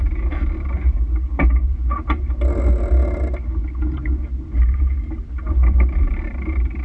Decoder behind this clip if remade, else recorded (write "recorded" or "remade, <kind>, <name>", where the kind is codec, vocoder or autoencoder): recorded